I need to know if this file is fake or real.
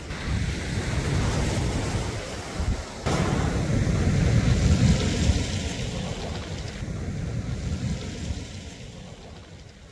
real